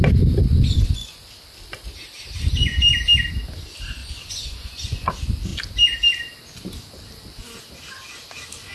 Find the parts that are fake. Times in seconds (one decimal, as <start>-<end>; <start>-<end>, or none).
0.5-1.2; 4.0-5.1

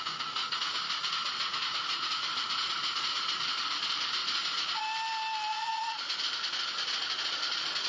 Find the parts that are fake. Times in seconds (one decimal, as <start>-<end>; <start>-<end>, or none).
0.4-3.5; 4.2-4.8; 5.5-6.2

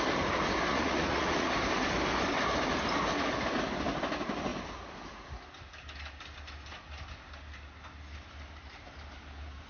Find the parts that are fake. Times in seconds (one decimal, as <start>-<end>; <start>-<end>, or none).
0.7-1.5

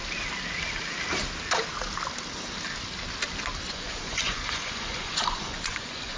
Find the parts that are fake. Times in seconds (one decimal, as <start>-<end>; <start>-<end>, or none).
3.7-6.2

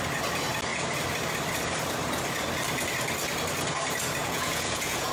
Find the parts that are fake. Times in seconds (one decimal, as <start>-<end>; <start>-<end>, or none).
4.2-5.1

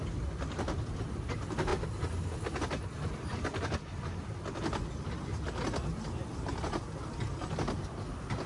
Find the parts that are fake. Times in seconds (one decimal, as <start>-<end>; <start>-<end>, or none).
none

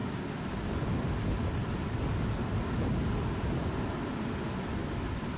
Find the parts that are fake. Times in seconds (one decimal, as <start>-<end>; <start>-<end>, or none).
none

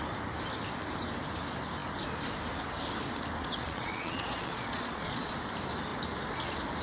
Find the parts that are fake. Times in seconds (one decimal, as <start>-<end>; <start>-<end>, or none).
3.4-5.3